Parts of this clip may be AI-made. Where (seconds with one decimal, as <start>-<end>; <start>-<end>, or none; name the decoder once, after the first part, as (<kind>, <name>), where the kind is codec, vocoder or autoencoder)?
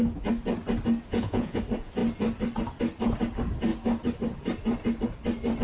1.1-1.6 (vocoder, Vocos)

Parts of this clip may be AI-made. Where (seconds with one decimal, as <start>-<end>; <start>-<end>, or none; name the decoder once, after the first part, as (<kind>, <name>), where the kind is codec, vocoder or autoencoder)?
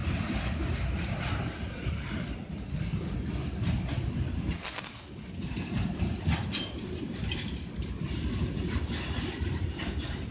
none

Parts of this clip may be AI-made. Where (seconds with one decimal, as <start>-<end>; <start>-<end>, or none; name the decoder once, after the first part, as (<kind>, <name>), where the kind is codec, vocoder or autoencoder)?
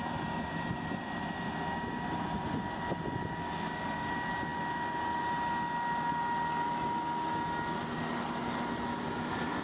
none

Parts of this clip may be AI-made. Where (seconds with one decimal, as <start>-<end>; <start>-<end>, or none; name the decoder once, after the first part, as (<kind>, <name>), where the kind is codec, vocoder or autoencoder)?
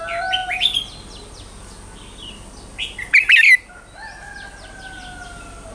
none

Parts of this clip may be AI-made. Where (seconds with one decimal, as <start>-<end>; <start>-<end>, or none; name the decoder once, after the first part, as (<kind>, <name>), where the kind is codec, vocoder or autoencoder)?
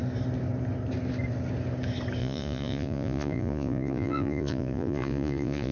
2.2-5.7 (vocoder, Vocos)